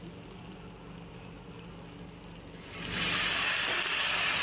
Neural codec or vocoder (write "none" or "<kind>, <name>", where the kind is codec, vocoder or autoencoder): none